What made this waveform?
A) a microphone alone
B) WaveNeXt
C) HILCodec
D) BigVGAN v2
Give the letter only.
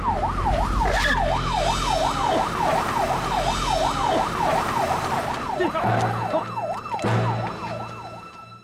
A